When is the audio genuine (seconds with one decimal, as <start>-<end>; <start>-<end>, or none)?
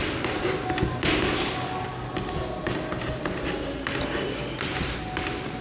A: 0.0-5.6